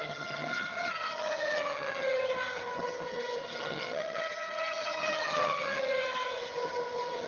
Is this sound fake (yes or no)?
yes